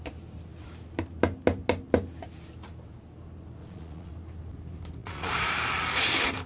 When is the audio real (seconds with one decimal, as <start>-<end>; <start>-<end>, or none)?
0.0-3.6; 4.1-5.0; 5.5-6.5